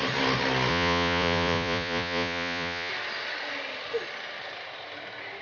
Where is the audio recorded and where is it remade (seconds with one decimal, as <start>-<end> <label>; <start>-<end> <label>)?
0.0-0.7 recorded; 0.7-2.9 remade; 2.9-5.4 recorded